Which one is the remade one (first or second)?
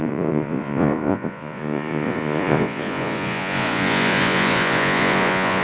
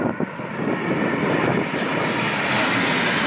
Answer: first